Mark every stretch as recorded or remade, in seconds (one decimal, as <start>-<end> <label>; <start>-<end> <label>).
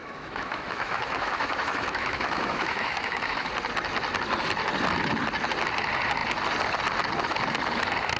0.0-3.5 remade; 3.5-8.2 recorded